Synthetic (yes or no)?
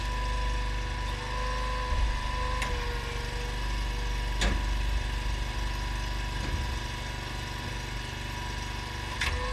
no